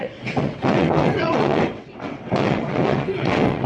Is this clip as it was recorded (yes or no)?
no